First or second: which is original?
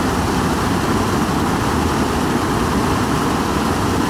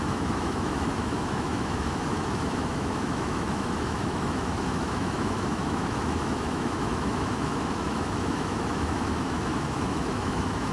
first